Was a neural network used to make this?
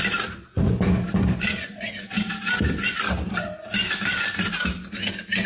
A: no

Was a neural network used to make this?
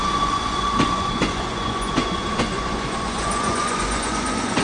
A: yes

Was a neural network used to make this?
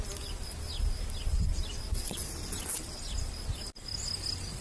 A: no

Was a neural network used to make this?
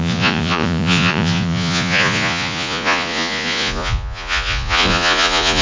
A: yes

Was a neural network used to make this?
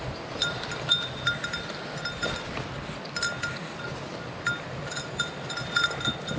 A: no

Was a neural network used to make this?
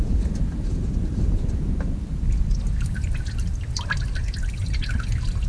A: no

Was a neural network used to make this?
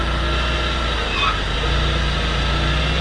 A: no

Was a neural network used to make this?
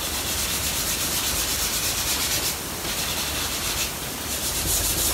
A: no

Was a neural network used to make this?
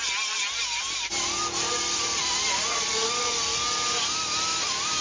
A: no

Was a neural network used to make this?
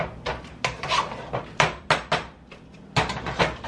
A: no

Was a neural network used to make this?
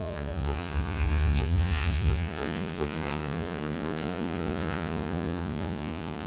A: yes